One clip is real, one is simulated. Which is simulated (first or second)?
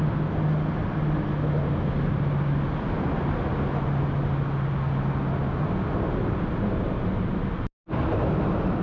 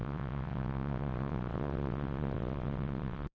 second